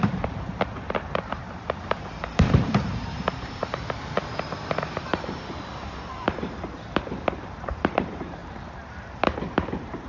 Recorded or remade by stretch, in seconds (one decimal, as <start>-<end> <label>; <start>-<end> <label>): 0.0-10.1 remade